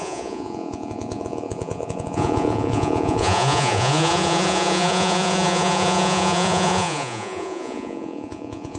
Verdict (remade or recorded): remade